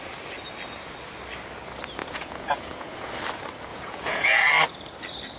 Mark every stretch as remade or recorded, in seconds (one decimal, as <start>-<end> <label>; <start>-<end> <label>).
0.0-2.0 recorded; 2.0-3.1 remade; 3.1-3.7 recorded; 3.7-4.5 remade; 4.5-5.4 recorded